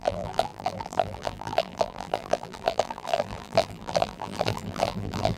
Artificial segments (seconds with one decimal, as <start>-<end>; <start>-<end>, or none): 0.0-5.4